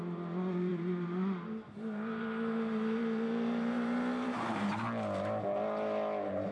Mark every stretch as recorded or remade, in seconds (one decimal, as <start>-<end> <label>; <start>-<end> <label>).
0.0-0.7 recorded; 0.7-4.6 remade; 4.6-6.5 recorded

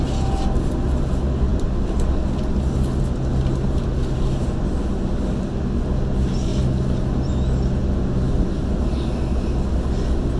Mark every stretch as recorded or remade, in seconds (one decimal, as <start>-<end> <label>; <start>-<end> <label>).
0.0-10.4 recorded

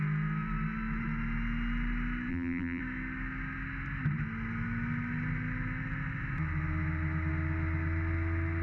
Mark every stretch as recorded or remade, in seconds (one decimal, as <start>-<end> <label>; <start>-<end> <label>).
0.0-2.3 recorded; 2.3-2.8 remade; 2.8-8.6 recorded

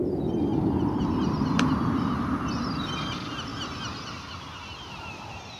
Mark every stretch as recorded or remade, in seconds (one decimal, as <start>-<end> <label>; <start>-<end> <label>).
0.0-5.6 recorded

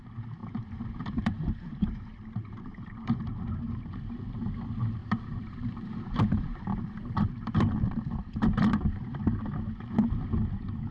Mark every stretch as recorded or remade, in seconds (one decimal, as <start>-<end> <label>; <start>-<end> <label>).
0.0-0.4 recorded; 0.4-3.3 remade; 3.3-5.0 recorded; 5.0-9.1 remade; 9.1-10.9 recorded

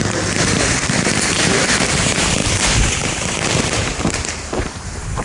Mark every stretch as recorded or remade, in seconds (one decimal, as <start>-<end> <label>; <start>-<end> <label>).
0.0-2.4 remade; 2.4-3.6 recorded; 3.6-5.2 remade

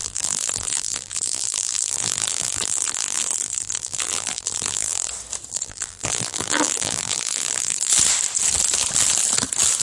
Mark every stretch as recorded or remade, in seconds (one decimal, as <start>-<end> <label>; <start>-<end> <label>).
0.0-5.1 remade; 5.1-5.5 recorded; 5.5-7.9 remade; 7.9-9.8 recorded

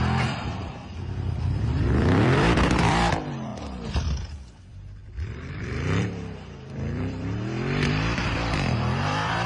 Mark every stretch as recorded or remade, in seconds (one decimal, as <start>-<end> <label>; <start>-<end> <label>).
0.0-3.5 remade; 3.5-4.6 recorded; 4.6-9.5 remade